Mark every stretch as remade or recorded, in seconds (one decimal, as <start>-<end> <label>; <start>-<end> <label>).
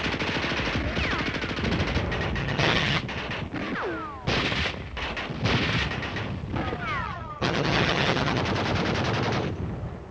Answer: 0.0-2.4 recorded; 2.4-3.0 remade; 3.0-7.0 recorded; 7.0-8.4 remade; 8.4-10.1 recorded